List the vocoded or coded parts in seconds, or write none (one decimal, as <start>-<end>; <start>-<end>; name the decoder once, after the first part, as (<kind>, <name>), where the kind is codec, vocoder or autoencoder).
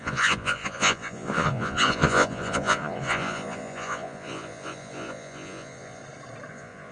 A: 0.0-6.0 (vocoder, Vocos); 6.5-6.9